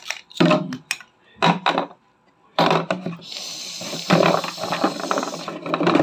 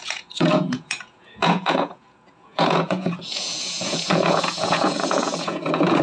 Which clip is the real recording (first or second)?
first